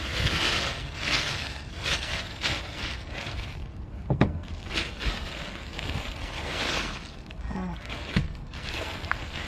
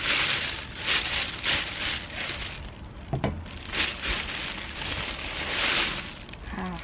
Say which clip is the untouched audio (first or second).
second